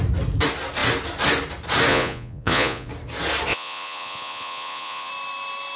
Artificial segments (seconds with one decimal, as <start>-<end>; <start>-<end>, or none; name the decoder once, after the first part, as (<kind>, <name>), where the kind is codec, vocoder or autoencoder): 1.9-2.9 (vocoder, Vocos); 3.5-5.1